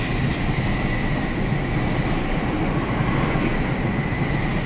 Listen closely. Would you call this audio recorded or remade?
recorded